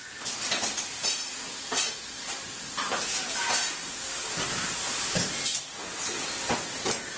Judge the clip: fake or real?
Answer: real